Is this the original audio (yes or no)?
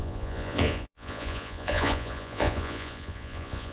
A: no